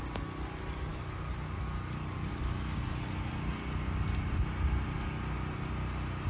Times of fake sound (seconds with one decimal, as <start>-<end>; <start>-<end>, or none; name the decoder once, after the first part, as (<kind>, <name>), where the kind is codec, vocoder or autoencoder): none